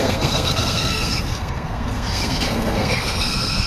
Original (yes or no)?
no